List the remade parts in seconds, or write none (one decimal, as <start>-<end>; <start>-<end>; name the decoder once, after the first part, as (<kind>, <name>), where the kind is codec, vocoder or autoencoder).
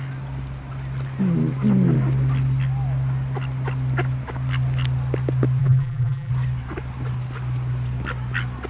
5.6-6.3 (vocoder, BigVGAN v2)